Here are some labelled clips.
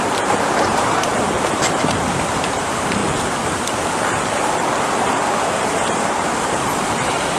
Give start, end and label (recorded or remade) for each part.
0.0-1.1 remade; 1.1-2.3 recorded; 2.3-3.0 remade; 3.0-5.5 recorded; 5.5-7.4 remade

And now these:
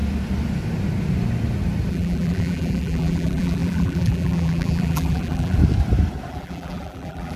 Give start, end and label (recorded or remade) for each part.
0.0-1.9 recorded; 1.9-5.6 remade; 5.6-6.3 recorded; 6.3-7.4 remade

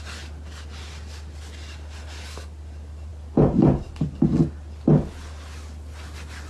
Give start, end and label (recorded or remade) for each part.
0.0-6.5 recorded

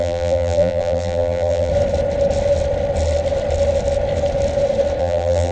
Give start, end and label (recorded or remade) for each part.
0.0-1.7 remade; 1.7-5.0 recorded; 5.0-5.5 remade

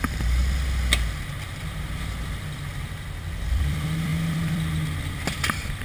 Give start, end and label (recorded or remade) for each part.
0.0-0.4 remade; 0.4-3.5 recorded; 3.5-5.8 remade

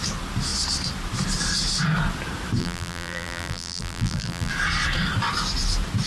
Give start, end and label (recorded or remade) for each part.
0.0-2.6 recorded; 2.6-4.5 remade; 4.5-6.1 recorded

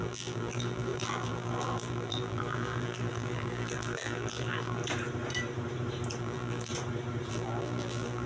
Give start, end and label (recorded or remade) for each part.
0.0-4.8 remade; 4.8-6.2 recorded; 6.2-6.7 remade; 6.7-7.3 recorded; 7.3-8.3 remade